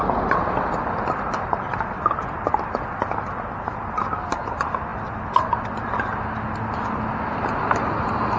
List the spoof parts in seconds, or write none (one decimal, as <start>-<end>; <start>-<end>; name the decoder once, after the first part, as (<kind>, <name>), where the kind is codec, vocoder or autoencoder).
none